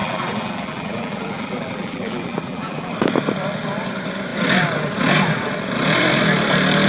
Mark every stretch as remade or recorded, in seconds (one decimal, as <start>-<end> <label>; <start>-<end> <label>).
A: 0.0-2.9 remade; 2.9-6.9 recorded